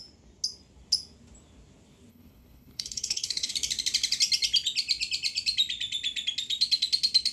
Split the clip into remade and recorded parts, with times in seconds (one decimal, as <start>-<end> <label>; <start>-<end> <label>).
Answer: 0.0-2.1 recorded; 2.1-3.5 remade; 3.5-7.3 recorded